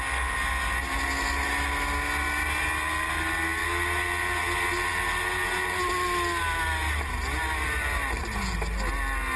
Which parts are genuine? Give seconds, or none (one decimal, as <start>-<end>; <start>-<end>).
0.0-9.4